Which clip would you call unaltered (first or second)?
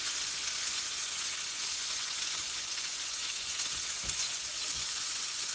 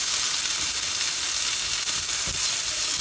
second